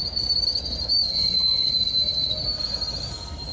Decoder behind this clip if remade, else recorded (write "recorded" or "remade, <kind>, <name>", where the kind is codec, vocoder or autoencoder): recorded